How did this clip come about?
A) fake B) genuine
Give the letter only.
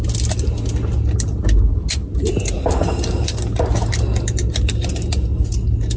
B